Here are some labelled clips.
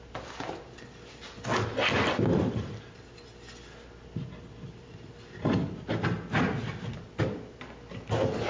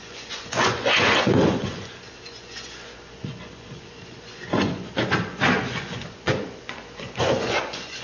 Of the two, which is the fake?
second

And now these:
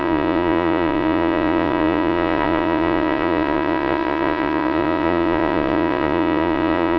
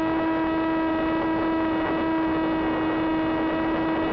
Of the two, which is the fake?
first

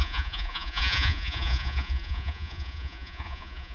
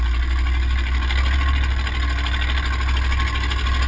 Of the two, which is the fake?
first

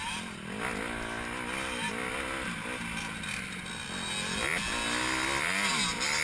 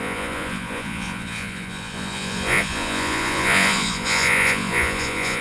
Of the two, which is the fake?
second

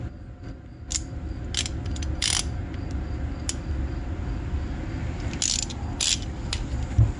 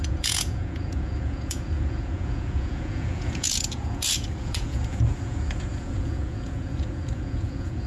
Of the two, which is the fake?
second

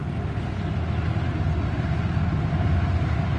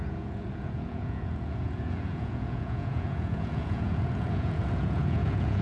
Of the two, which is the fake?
second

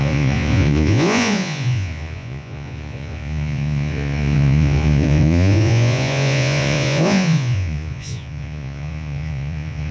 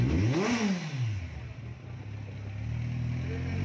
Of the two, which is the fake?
first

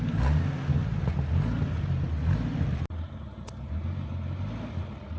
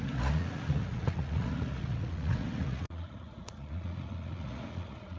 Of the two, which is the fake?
second